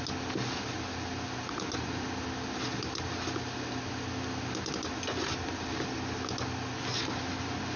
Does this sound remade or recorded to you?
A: recorded